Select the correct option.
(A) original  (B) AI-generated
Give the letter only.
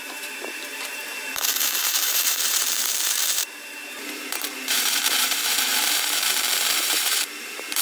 B